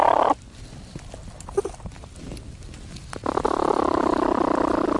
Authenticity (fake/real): real